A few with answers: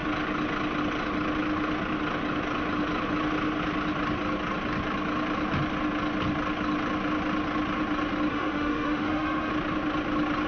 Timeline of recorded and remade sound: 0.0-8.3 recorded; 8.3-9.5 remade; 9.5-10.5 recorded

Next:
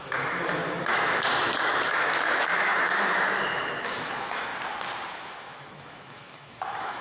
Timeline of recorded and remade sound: 0.0-4.5 remade; 4.5-5.1 recorded; 5.1-7.0 remade